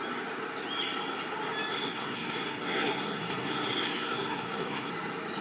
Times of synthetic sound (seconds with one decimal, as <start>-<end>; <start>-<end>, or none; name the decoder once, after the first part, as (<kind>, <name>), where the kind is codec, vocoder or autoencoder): 1.7-4.9 (codec, SNAC)